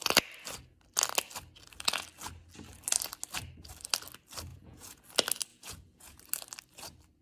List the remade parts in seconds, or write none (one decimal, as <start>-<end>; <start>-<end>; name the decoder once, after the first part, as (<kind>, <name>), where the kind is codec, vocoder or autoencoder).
4.5-5.0 (vocoder, Vocos); 5.5-6.2